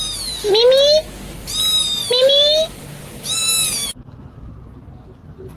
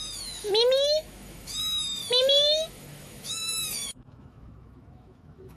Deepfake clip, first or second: second